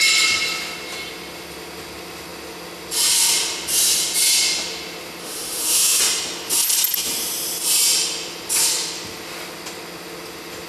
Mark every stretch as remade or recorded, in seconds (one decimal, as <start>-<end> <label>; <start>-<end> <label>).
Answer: 0.0-5.2 recorded; 5.2-6.0 remade; 6.0-10.7 recorded